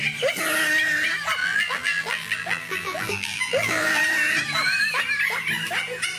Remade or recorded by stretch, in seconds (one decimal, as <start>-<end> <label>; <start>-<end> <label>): 0.0-1.4 recorded; 1.4-4.0 remade; 4.0-6.2 recorded